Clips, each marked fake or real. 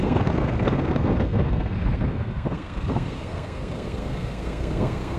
fake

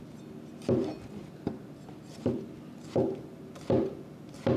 real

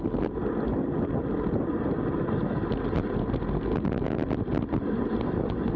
real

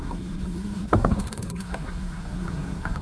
fake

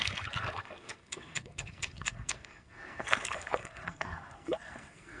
fake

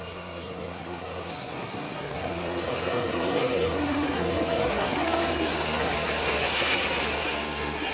fake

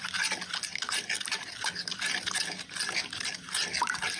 real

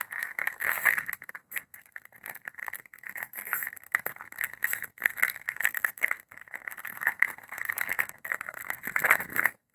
fake